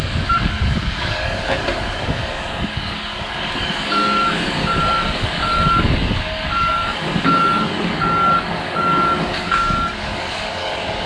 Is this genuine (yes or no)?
no